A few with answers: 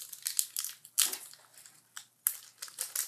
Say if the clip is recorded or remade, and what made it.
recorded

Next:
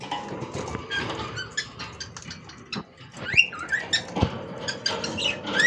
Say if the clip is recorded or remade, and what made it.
recorded